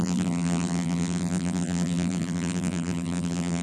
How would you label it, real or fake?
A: fake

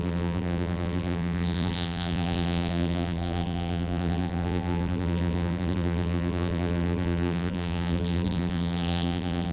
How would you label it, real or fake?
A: fake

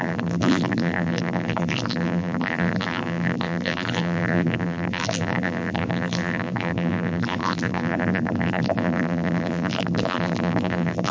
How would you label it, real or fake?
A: fake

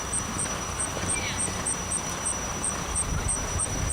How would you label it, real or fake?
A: fake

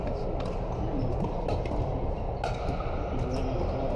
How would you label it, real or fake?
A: real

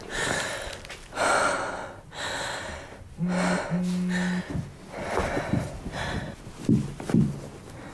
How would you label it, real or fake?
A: real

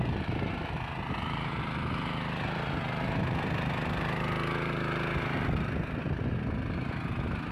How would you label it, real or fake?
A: real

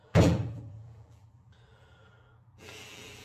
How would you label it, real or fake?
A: fake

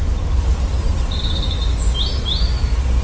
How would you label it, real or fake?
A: real